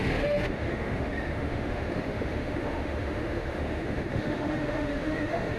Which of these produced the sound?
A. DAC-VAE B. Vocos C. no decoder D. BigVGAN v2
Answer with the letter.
A